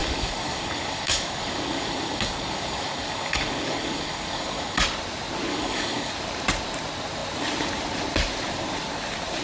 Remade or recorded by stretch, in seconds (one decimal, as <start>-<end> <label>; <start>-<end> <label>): 0.0-4.8 remade; 4.8-5.5 recorded; 5.5-6.1 remade; 6.1-9.4 recorded